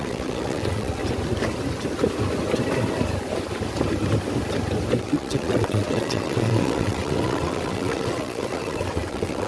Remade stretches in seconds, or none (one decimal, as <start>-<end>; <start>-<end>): 0.0-1.0; 5.0-9.5